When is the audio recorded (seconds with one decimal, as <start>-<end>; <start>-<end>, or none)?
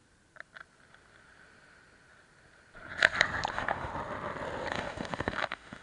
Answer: 0.0-3.5; 3.9-4.7